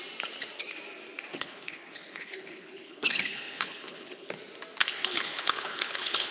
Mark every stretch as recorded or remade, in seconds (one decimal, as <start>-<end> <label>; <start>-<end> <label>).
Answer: 0.0-1.3 recorded; 1.3-4.3 remade; 4.3-4.8 recorded; 4.8-6.3 remade